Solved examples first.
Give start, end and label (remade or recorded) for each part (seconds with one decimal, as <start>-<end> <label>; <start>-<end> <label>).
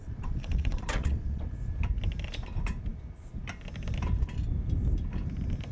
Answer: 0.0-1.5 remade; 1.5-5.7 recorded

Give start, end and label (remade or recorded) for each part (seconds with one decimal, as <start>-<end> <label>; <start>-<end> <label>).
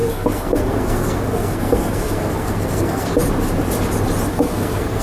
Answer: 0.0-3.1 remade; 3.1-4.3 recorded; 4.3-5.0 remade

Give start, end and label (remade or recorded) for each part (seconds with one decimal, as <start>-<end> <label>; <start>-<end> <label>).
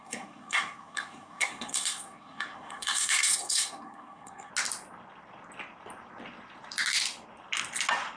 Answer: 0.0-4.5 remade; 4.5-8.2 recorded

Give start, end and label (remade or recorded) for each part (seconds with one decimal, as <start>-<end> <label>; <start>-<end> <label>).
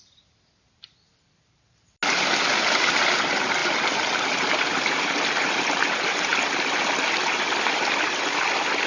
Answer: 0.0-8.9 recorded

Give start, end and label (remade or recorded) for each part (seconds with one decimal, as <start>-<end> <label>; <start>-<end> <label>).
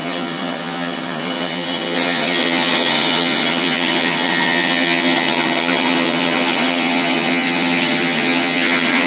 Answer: 0.0-9.1 remade